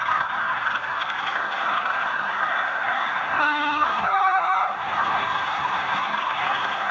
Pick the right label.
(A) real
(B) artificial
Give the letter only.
B